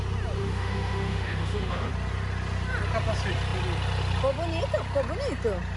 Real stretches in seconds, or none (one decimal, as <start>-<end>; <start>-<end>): 0.0-0.4; 1.9-5.8